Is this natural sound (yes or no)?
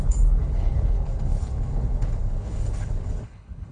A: no